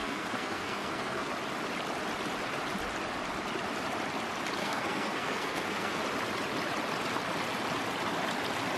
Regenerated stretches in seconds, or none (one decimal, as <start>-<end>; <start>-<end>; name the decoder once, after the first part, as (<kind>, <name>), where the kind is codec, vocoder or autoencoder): 0.0-1.3 (codec, SNAC); 4.6-6.0